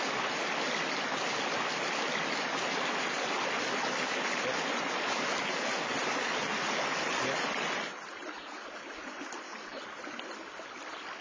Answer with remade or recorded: recorded